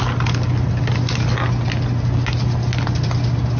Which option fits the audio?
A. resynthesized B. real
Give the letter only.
B